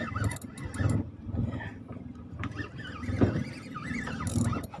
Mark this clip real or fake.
real